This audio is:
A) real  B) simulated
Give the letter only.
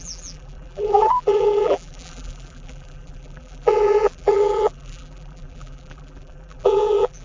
B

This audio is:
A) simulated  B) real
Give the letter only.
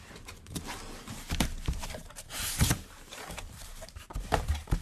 A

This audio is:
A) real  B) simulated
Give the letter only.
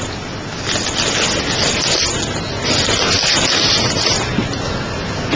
A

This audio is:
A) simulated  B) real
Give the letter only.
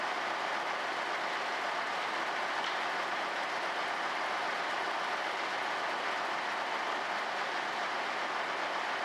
B